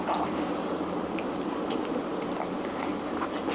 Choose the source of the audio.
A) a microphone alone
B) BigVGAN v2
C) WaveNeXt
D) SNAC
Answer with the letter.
A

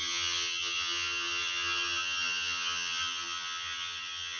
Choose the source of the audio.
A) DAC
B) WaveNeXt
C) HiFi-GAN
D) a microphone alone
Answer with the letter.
C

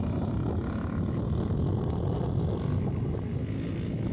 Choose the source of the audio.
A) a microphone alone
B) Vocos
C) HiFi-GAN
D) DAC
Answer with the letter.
A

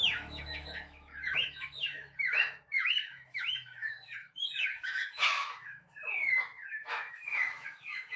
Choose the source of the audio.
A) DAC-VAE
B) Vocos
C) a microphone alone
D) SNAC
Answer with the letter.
A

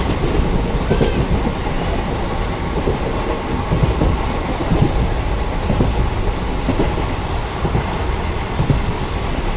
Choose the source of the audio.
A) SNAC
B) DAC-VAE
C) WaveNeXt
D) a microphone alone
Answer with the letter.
D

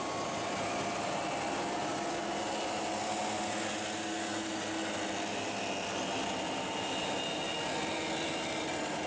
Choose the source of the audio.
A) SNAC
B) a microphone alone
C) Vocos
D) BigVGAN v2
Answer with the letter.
B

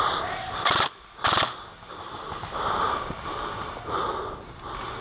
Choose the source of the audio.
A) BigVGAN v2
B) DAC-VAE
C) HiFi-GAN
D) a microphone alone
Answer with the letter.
D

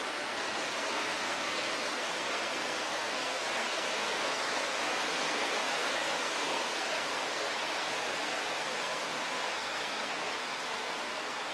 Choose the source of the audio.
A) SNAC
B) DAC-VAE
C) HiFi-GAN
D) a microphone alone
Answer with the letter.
A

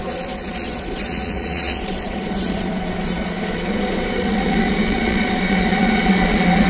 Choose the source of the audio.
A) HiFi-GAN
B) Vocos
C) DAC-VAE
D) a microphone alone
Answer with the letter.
B